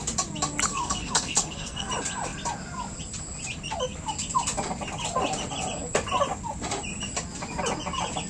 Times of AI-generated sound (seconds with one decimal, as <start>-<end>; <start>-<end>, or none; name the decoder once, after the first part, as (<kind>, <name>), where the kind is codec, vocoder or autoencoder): 0.7-1.9 (codec, SNAC)